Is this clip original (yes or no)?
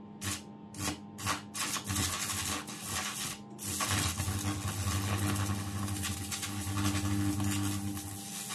yes